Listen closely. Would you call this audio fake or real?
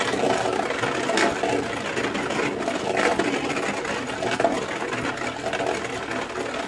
real